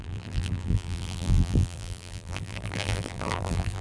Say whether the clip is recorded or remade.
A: remade